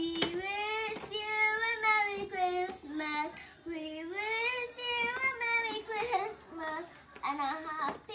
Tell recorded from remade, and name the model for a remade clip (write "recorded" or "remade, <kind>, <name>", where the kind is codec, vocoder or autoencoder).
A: recorded